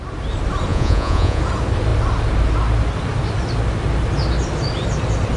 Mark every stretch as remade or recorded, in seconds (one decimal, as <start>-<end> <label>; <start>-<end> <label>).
0.0-0.7 recorded; 0.7-1.4 remade; 1.4-5.4 recorded